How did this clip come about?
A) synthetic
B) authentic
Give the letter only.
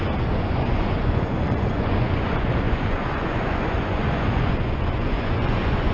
A